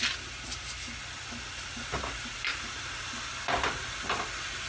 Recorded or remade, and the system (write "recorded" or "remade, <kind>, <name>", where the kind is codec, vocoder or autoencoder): recorded